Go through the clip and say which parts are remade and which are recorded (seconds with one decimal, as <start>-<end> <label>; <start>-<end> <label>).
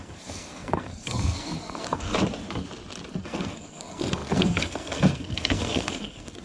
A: 0.0-2.1 remade; 2.1-3.2 recorded; 3.2-6.4 remade